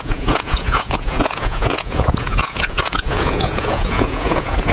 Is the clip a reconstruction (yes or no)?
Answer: yes